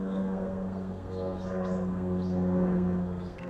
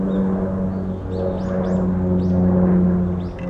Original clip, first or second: second